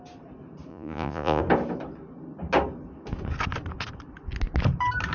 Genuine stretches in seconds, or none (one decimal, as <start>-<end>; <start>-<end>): 0.0-0.7; 1.4-5.1